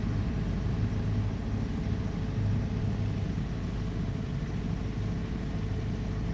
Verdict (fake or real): real